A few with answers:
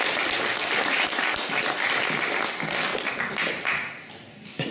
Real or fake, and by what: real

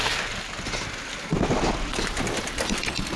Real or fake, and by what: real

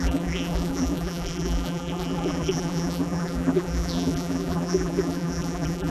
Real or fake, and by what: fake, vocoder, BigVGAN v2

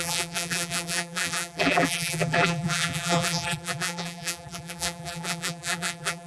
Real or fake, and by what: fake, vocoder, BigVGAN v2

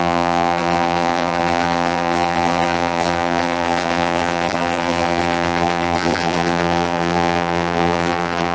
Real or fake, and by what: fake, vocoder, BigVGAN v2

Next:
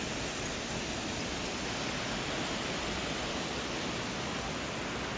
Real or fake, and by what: real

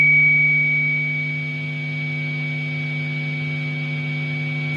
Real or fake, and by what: real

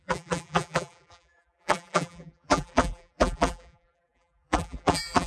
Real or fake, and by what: fake, vocoder, BigVGAN v2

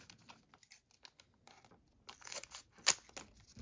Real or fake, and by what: real